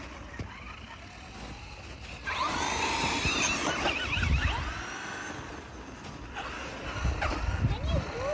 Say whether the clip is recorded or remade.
recorded